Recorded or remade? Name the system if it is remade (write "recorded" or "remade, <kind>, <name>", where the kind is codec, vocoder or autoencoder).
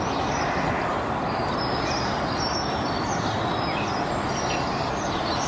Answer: recorded